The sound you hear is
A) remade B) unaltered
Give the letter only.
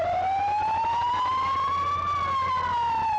B